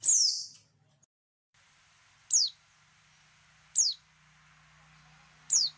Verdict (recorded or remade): recorded